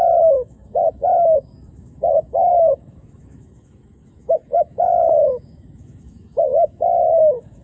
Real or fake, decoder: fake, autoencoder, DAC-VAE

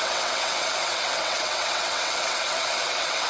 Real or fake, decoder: fake, vocoder, WaveNeXt